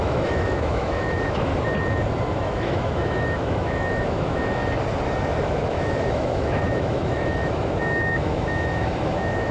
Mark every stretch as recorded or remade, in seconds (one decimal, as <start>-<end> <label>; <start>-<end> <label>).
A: 0.0-1.5 remade; 1.5-2.4 recorded; 2.4-4.6 remade; 4.6-5.4 recorded; 5.4-9.5 remade